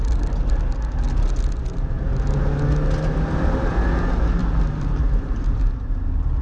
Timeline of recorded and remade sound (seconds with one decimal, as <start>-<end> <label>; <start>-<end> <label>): 0.0-1.6 recorded; 1.6-2.3 remade; 2.3-4.4 recorded; 4.4-5.6 remade; 5.6-6.4 recorded